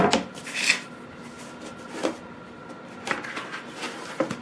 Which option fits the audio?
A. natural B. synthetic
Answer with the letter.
A